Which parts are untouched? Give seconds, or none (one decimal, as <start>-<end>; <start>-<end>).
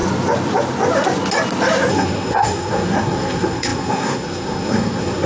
0.0-1.9